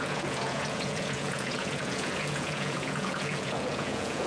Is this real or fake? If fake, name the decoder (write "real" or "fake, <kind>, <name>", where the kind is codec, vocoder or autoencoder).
fake, vocoder, Vocos